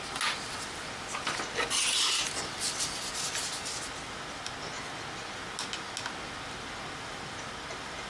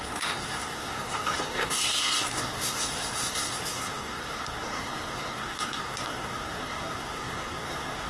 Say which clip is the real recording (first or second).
first